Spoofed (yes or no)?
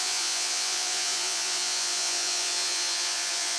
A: yes